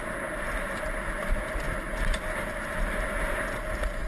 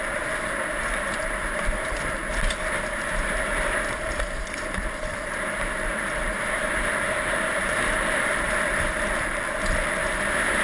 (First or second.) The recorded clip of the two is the first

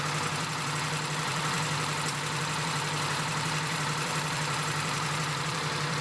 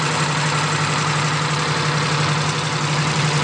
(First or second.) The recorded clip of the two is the second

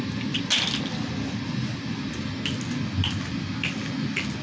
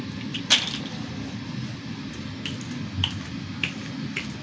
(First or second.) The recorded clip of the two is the first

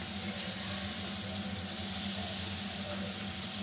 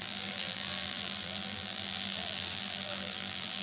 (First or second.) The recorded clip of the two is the first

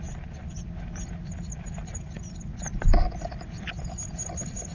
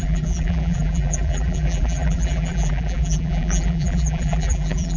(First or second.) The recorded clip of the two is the first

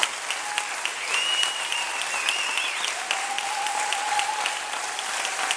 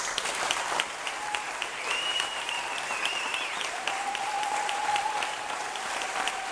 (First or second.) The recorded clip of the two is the first